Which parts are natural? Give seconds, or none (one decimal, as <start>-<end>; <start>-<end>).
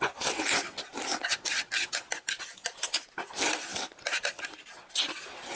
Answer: 0.0-0.9; 2.5-3.7; 5.1-5.6